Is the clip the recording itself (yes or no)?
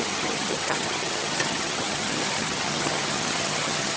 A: no